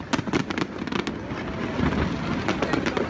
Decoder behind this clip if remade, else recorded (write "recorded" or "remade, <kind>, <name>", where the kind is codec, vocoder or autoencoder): recorded